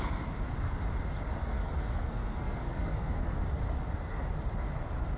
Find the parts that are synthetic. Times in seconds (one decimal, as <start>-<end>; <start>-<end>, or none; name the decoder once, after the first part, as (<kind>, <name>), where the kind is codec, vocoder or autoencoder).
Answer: 1.4-3.4 (codec, SNAC)